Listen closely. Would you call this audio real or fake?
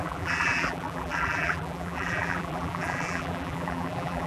fake